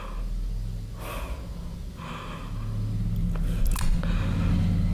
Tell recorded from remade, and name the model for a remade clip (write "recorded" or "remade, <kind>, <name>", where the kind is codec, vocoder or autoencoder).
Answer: recorded